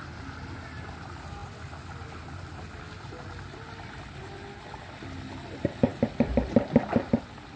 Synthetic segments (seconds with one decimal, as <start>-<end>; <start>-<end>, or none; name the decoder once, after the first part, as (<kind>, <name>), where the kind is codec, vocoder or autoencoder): 5.9-7.6 (vocoder, BigVGAN v2)